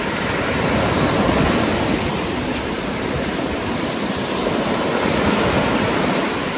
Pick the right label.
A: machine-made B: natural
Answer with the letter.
B